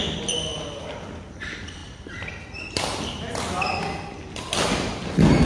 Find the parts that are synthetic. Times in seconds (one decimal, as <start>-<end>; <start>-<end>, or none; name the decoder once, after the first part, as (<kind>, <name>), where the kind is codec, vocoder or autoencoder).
none